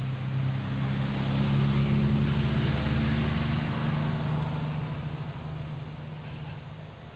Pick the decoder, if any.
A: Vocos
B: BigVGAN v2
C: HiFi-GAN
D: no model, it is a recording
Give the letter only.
D